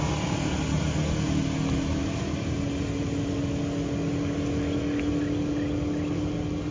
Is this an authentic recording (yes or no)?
yes